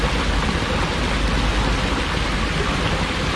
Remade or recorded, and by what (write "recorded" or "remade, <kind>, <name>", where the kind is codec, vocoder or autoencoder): recorded